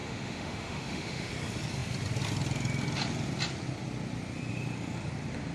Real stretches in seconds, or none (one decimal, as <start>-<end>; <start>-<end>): 1.3-5.5